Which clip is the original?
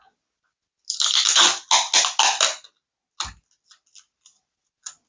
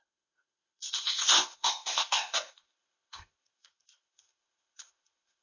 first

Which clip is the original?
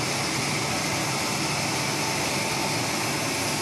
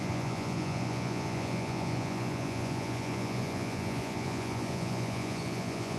first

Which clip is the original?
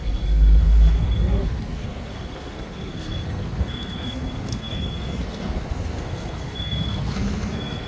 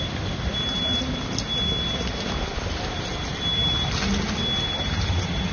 second